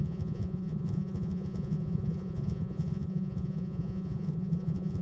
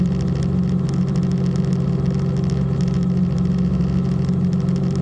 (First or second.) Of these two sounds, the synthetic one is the first